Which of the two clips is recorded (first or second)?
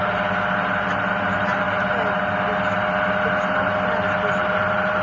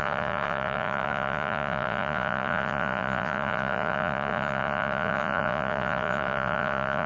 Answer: first